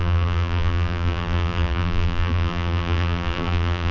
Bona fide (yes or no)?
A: no